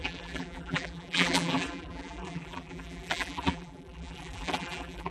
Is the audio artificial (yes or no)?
yes